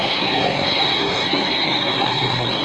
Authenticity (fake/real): fake